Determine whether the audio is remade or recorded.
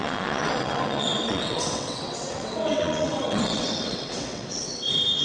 remade